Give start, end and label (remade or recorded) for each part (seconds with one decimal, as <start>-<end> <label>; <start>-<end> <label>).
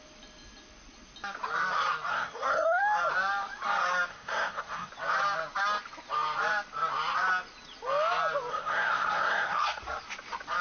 0.0-2.1 recorded; 2.1-2.8 remade; 2.8-4.1 recorded; 4.1-4.9 remade; 4.9-8.5 recorded; 8.5-9.8 remade; 9.8-10.6 recorded